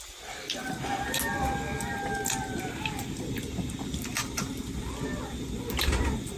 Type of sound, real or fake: real